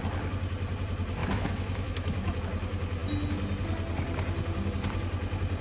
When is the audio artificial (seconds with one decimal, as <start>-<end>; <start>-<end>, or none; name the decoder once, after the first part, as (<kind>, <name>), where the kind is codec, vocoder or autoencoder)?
1.2-2.4 (autoencoder, DAC-VAE)